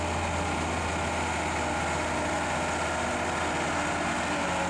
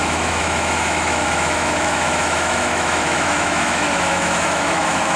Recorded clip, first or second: first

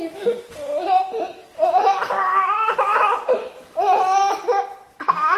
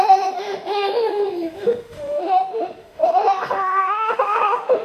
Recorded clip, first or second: first